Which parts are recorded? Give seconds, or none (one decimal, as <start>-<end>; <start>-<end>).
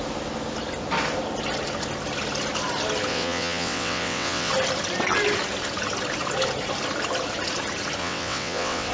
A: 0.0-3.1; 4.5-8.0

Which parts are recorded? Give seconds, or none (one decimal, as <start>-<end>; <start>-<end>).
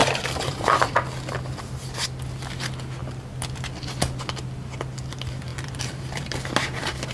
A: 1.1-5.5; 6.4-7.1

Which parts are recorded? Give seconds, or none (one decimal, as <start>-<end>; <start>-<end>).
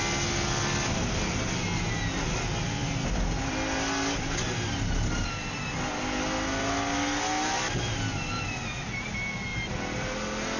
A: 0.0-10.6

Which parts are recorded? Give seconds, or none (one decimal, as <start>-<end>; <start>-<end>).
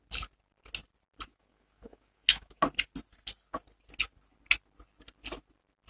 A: 0.0-1.3; 2.6-5.9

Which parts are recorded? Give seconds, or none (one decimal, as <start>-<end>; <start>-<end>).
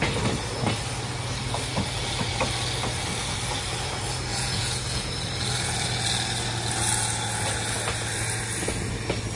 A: 0.0-4.3; 5.1-9.4